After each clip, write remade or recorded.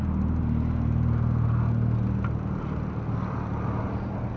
recorded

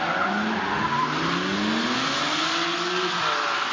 recorded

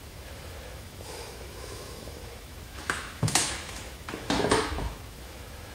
remade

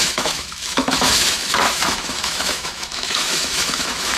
remade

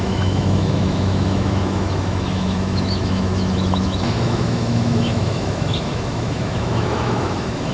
remade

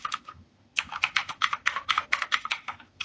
remade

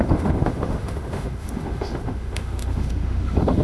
remade